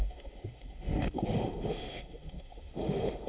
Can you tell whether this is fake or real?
fake